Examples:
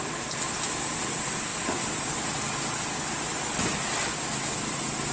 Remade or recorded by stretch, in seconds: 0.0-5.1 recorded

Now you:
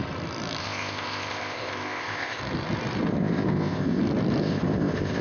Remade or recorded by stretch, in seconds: 0.0-0.6 recorded; 0.6-2.4 remade; 2.4-3.1 recorded; 3.1-4.0 remade; 4.0-4.4 recorded; 4.4-5.2 remade

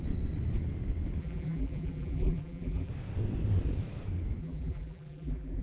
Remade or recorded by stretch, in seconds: 0.0-1.2 recorded; 1.2-2.9 remade; 2.9-4.4 recorded; 4.4-5.6 remade